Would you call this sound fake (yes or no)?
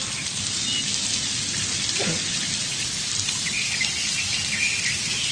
no